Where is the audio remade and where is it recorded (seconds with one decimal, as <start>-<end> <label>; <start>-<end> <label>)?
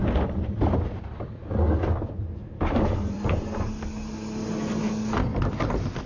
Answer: 0.0-3.4 remade; 3.4-5.3 recorded; 5.3-6.1 remade